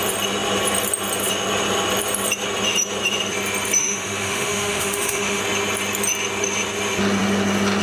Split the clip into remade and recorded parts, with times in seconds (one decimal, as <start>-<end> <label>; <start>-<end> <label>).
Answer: 0.0-3.8 recorded; 3.8-5.4 remade; 5.4-7.8 recorded